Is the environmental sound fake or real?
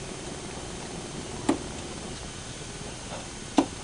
real